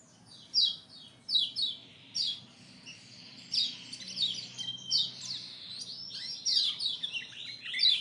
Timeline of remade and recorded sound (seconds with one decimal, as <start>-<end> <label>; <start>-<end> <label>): 0.0-8.0 recorded